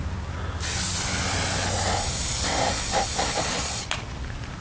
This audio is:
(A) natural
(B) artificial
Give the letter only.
A